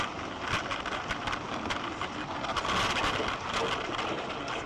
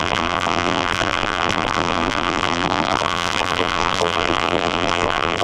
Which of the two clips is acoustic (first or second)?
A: first